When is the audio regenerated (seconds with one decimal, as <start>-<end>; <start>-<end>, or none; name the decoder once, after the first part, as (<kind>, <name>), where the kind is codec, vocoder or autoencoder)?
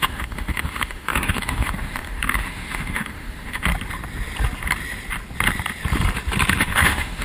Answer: 0.0-3.7 (autoencoder, DAC-VAE); 6.6-7.2